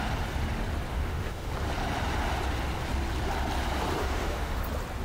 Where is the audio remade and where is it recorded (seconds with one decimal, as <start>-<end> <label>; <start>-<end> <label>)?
0.0-0.9 recorded; 0.9-1.5 remade; 1.5-4.0 recorded; 4.0-4.6 remade; 4.6-5.0 recorded

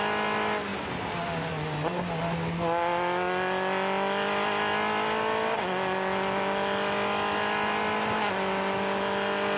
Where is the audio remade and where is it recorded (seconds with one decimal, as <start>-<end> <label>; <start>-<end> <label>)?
0.0-9.6 recorded

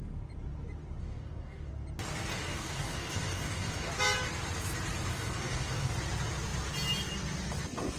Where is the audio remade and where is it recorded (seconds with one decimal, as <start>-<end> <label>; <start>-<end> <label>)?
0.0-1.0 recorded; 1.0-1.7 remade; 1.7-2.3 recorded; 2.3-3.9 remade; 3.9-5.1 recorded; 5.1-5.9 remade; 5.9-8.0 recorded

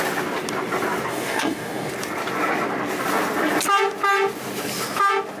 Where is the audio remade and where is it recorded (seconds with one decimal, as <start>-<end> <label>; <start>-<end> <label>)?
0.0-1.1 recorded; 1.1-1.9 remade; 1.9-5.4 recorded

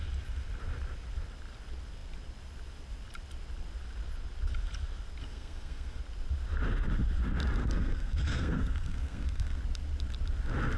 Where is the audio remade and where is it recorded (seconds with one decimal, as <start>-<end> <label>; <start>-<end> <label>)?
0.0-5.2 recorded; 5.2-6.0 remade; 6.0-7.6 recorded; 7.6-9.6 remade; 9.6-10.8 recorded

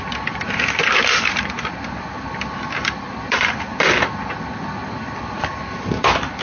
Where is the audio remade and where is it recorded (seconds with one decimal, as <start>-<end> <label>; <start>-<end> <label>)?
0.0-6.4 recorded